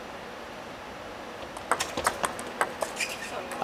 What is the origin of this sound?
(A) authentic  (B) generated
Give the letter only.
A